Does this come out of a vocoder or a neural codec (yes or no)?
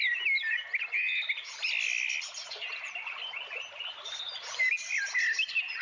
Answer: no